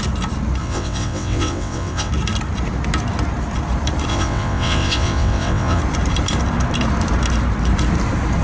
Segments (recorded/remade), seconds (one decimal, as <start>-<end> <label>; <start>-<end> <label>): 0.0-0.6 recorded; 0.6-2.1 remade; 2.1-4.1 recorded; 4.1-5.8 remade; 5.8-8.4 recorded

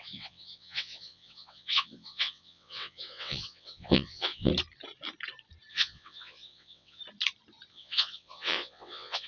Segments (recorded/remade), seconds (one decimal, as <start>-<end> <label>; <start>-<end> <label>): 0.0-4.5 remade; 4.5-5.7 recorded; 5.7-7.0 remade; 7.0-7.7 recorded; 7.7-9.3 remade

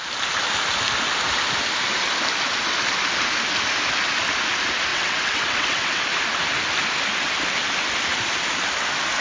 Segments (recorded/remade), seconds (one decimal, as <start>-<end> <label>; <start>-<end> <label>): 0.0-4.9 recorded; 4.9-6.0 remade; 6.0-9.2 recorded

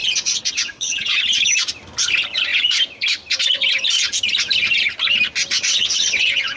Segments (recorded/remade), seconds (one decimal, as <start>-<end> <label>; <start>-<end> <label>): 0.0-1.2 remade; 1.2-5.6 recorded; 5.6-6.6 remade

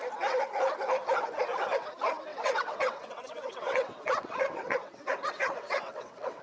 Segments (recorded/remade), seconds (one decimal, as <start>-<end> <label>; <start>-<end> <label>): 0.0-2.3 recorded; 2.3-6.4 remade

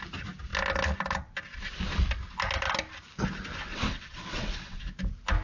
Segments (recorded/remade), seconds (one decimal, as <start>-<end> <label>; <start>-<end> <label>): 0.0-3.7 recorded; 3.7-4.8 remade; 4.8-5.4 recorded